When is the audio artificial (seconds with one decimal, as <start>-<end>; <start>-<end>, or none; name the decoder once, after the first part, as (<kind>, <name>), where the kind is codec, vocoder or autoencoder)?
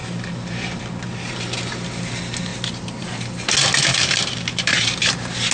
0.0-0.8 (vocoder, BigVGAN v2); 3.9-5.1